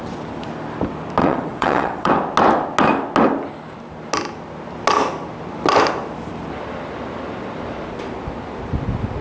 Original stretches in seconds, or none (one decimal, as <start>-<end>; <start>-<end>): 0.0-1.2; 2.1-9.2